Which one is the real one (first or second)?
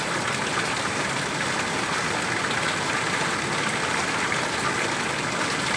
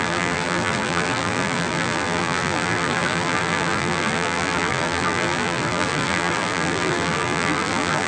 first